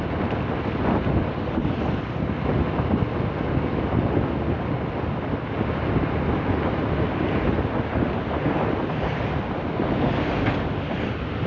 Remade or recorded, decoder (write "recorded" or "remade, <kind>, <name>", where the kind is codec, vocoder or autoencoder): recorded